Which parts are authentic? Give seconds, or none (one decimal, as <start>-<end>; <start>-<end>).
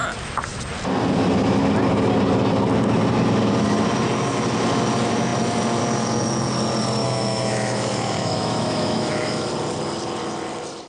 0.0-7.0; 9.5-10.9